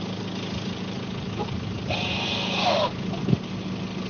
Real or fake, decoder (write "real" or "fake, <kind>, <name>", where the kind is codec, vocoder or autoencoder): real